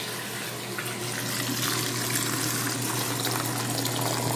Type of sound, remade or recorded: recorded